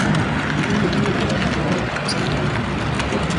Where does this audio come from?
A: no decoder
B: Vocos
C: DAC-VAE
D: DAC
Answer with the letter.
A